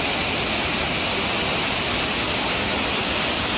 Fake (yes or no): no